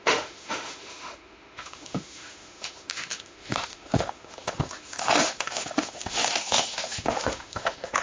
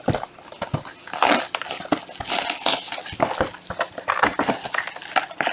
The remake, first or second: first